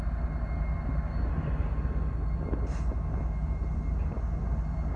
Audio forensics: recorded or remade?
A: recorded